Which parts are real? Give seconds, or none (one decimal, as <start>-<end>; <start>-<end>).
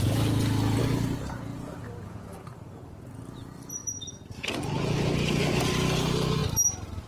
0.0-7.1